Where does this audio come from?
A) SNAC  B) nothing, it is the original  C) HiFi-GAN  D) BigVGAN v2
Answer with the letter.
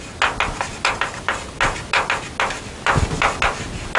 B